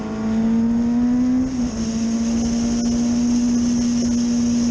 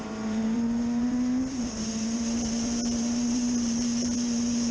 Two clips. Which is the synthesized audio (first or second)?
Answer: second